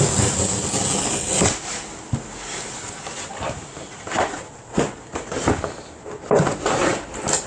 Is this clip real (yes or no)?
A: yes